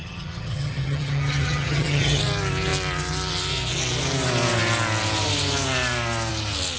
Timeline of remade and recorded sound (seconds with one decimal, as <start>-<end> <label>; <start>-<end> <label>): 0.0-2.2 remade; 2.2-6.8 recorded